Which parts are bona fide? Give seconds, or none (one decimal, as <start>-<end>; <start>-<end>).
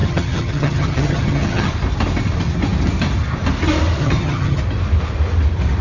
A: 1.7-4.0; 4.6-5.8